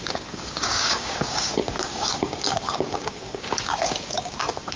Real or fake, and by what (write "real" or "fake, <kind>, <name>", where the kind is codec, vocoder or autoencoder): fake, codec, DAC